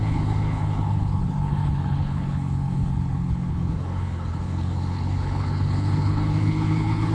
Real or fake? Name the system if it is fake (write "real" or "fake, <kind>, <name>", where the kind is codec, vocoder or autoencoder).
fake, codec, HILCodec